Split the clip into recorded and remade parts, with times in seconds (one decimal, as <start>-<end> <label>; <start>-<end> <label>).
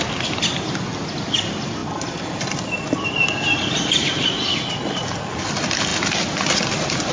0.0-7.1 recorded